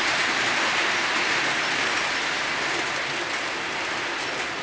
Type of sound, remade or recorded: recorded